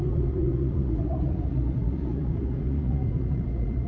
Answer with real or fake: fake